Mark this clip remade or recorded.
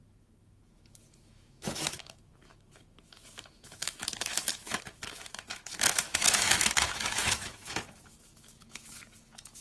remade